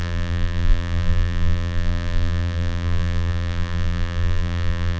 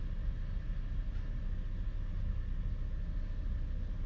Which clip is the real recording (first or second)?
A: second